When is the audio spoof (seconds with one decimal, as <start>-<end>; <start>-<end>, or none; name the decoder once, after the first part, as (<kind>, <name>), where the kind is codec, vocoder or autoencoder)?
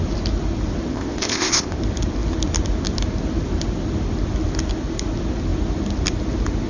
0.9-1.8 (codec, ZipCodec)